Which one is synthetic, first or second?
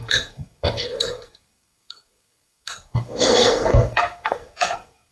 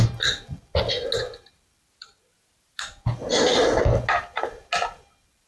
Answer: first